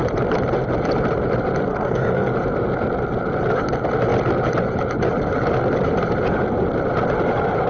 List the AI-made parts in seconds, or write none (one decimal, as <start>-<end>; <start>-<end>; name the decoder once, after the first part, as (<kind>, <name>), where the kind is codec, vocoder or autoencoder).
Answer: 1.7-2.3 (codec, SNAC)